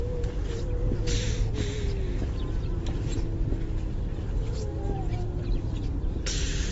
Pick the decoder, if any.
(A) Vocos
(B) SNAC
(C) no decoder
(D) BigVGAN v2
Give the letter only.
C